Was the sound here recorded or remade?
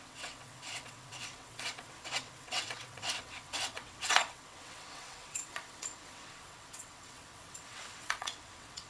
remade